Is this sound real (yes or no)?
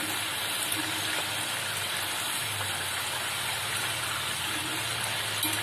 yes